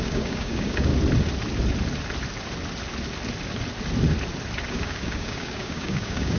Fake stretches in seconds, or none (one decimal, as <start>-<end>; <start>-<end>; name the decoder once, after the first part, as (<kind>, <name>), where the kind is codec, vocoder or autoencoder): 0.0-0.9 (codec, DAC); 4.7-6.4